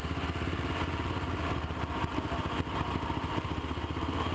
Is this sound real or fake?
real